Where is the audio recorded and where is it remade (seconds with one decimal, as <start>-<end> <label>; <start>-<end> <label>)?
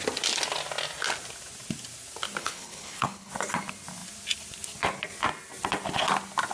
0.0-2.4 recorded; 2.4-3.3 remade; 3.3-6.5 recorded